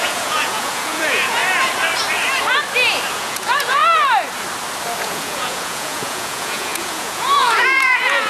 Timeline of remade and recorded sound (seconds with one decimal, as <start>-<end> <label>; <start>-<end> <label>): 0.0-1.4 remade; 1.4-3.1 recorded; 3.1-3.8 remade; 3.8-5.0 recorded; 5.0-8.3 remade